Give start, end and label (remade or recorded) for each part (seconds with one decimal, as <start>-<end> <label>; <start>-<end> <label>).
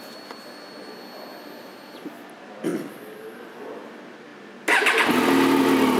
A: 0.0-6.0 recorded